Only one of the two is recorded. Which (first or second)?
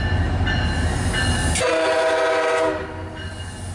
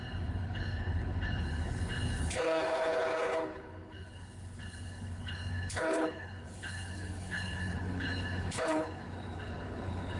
first